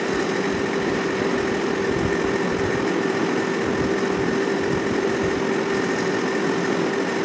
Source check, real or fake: real